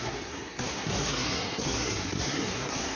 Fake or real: fake